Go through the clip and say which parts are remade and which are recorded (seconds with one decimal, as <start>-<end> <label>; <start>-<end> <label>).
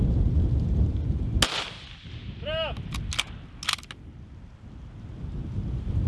0.0-6.1 recorded